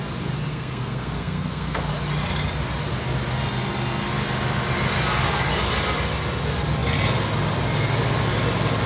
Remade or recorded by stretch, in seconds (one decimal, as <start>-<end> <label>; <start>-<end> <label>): 0.0-0.5 recorded; 0.5-1.9 remade; 1.9-8.9 recorded